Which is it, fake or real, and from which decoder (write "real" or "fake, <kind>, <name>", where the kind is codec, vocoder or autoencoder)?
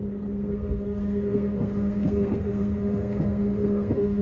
fake, codec, SNAC